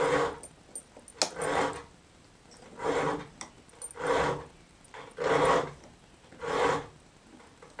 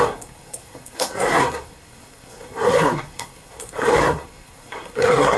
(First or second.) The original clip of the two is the first